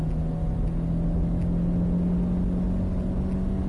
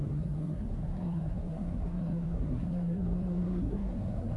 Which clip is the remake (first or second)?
second